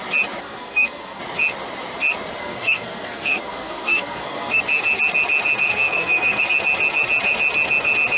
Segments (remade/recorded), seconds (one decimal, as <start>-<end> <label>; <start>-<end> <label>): 0.0-0.4 recorded; 0.4-1.2 remade; 1.2-2.4 recorded; 2.4-4.6 remade; 4.6-5.7 recorded; 5.7-6.4 remade; 6.4-8.2 recorded